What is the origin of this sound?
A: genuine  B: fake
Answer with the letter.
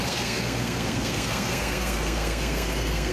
B